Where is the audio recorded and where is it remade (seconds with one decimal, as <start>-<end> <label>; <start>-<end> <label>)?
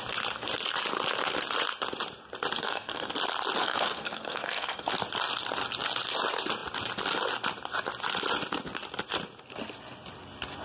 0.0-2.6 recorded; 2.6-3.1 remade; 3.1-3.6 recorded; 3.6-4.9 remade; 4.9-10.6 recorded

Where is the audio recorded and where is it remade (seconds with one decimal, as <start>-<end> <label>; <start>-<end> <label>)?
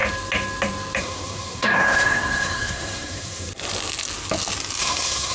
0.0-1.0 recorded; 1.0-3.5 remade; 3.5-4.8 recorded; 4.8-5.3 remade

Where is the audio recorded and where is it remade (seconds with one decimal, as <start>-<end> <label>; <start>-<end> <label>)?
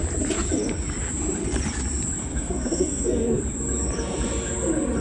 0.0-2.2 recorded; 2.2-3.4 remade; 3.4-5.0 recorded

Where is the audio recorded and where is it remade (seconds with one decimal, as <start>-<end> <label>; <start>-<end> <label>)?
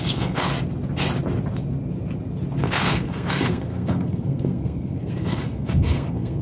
0.0-0.5 remade; 0.5-2.6 recorded; 2.6-6.4 remade